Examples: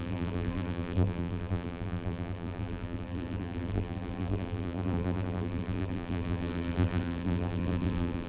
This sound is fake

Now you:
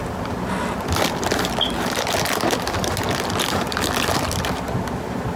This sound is real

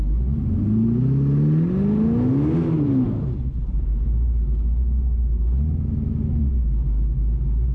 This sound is real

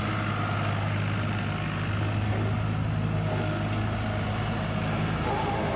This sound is real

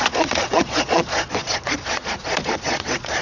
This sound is fake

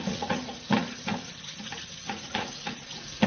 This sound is fake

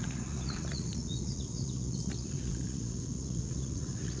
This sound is fake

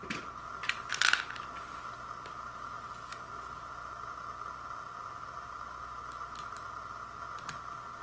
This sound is real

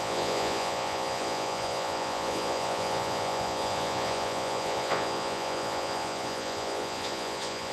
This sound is fake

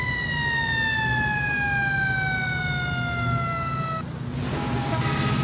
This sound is real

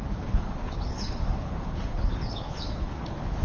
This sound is fake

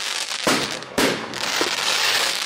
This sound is fake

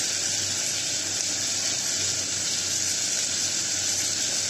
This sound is real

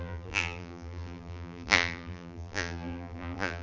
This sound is fake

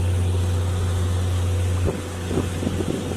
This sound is real